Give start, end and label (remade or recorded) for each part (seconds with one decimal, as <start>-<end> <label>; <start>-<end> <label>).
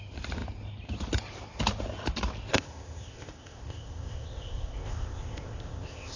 0.0-2.5 recorded; 2.5-6.2 remade